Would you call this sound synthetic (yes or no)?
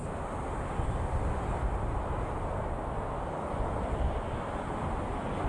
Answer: no